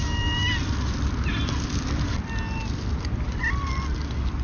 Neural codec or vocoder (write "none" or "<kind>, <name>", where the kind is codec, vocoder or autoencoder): none